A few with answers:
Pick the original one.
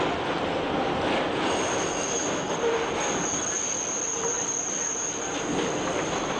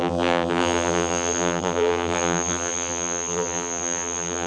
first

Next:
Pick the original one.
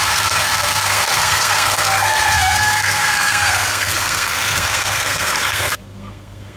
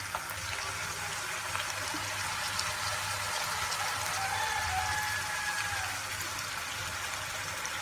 second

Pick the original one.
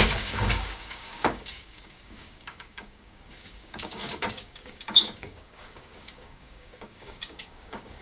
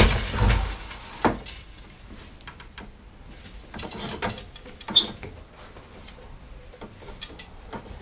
second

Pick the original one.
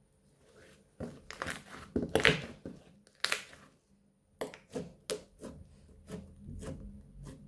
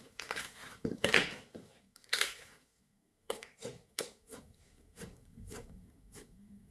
first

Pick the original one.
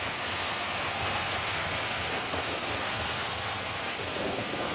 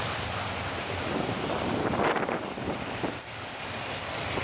second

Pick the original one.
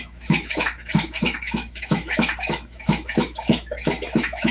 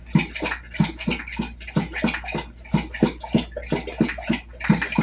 second